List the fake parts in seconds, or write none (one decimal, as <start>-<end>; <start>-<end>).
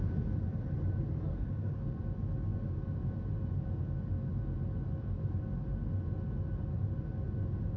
1.3-1.8